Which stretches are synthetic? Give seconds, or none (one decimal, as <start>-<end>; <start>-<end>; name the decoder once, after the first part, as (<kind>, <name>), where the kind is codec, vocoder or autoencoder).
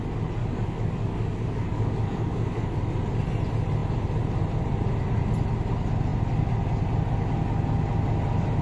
0.4-2.8 (codec, DAC)